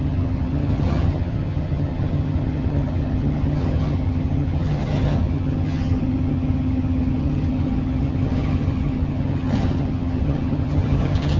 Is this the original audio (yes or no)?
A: no